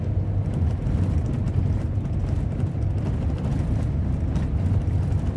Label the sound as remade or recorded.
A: recorded